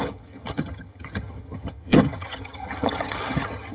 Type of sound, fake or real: fake